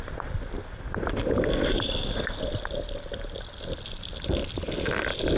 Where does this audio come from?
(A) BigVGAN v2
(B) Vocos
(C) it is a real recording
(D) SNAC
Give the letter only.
C